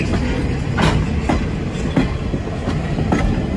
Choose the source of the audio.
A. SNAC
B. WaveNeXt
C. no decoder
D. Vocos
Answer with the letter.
C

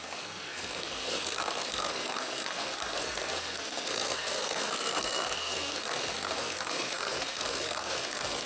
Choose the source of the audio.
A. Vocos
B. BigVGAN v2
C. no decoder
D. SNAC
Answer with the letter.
D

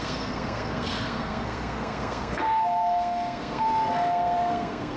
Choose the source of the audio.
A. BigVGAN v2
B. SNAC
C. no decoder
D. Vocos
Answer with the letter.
B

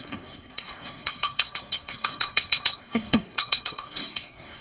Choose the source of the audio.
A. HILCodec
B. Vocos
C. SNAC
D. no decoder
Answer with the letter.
C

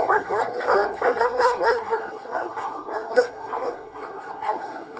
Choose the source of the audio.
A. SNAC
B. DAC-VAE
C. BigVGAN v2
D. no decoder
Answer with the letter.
A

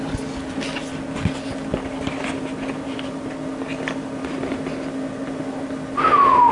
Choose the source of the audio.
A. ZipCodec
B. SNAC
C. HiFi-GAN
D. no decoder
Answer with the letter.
D